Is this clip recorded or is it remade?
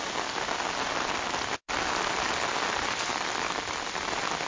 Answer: recorded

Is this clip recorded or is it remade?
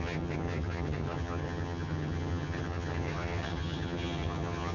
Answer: remade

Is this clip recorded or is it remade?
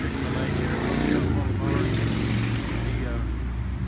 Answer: recorded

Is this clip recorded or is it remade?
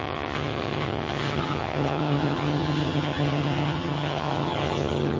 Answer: remade